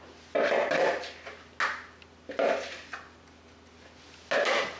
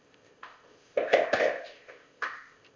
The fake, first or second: second